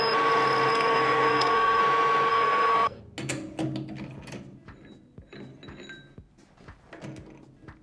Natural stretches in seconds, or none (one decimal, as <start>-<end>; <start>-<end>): 0.0-0.7; 1.8-2.3; 3.0-7.8